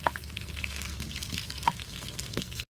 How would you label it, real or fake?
fake